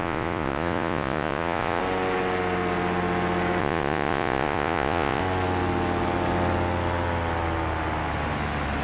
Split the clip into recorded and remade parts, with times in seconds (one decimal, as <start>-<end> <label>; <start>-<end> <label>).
0.0-1.8 remade; 1.8-3.6 recorded; 3.6-5.2 remade; 5.2-8.8 recorded